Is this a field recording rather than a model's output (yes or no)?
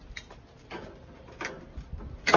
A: yes